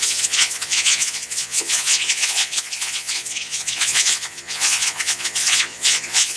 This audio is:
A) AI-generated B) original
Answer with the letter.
A